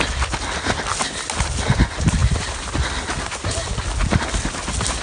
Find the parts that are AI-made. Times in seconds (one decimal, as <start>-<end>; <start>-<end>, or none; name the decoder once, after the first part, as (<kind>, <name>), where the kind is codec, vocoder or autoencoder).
none